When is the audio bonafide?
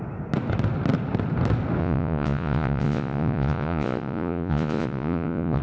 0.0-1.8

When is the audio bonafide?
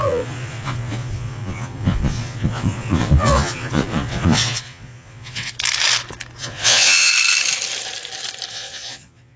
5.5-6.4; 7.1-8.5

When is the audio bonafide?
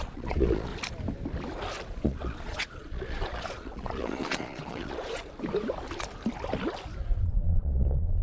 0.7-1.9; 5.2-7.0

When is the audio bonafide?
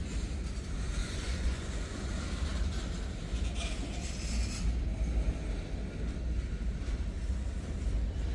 0.0-1.0; 2.1-8.3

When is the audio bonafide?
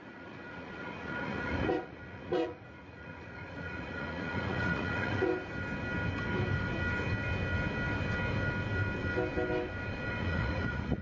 5.3-10.2